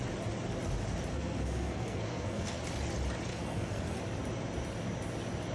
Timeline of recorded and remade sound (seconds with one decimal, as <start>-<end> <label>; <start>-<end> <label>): 0.0-1.1 recorded; 1.1-2.6 remade; 2.6-3.3 recorded; 3.3-4.0 remade; 4.0-5.5 recorded